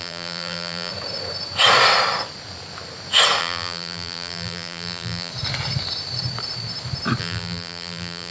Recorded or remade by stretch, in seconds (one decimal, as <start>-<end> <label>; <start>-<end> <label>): 0.0-0.9 remade; 0.9-3.4 recorded; 3.4-5.3 remade; 5.3-7.2 recorded; 7.2-8.3 remade